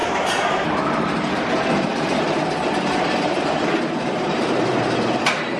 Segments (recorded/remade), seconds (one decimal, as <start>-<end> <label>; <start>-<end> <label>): 0.0-5.6 remade